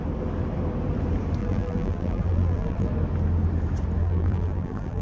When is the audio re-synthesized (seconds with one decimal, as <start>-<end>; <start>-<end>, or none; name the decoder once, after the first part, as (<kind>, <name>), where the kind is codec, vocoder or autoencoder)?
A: 1.4-2.9 (vocoder, BigVGAN v2); 4.0-5.0